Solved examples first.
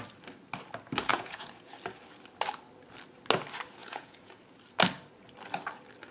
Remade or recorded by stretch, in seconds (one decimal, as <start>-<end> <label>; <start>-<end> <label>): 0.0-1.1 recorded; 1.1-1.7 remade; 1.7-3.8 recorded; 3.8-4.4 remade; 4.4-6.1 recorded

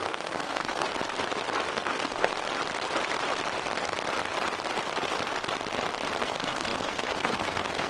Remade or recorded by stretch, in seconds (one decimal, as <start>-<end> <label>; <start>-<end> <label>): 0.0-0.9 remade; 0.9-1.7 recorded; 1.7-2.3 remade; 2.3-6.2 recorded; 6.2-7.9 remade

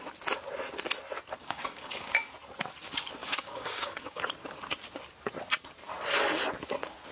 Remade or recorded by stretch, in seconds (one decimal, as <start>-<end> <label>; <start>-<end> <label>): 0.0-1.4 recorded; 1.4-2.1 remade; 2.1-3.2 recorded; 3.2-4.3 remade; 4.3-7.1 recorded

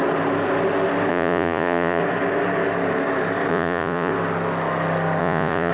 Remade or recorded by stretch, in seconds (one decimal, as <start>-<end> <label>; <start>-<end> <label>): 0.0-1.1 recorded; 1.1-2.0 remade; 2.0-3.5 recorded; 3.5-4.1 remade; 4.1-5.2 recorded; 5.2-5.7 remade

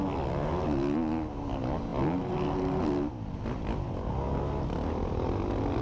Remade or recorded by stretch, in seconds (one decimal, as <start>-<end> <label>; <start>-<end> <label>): 0.0-5.8 recorded

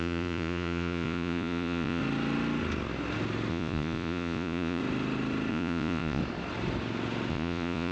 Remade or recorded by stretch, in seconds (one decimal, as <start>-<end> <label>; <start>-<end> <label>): 0.0-2.0 remade; 2.0-3.5 recorded; 3.5-4.8 remade; 4.8-5.5 recorded; 5.5-6.2 remade; 6.2-7.3 recorded; 7.3-7.9 remade